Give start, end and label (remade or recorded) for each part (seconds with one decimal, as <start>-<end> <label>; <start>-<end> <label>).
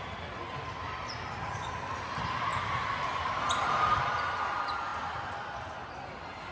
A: 0.0-6.5 recorded